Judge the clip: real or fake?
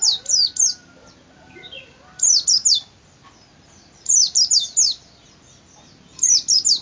real